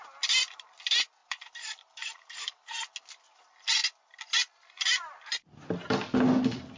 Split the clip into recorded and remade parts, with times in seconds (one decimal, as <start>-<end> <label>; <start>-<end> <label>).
0.0-1.2 recorded; 1.2-2.8 remade; 2.8-6.8 recorded